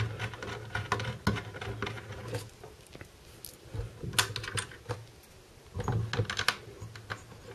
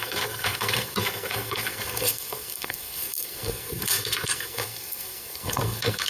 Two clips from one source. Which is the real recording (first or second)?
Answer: first